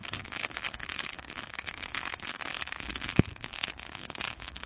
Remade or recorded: remade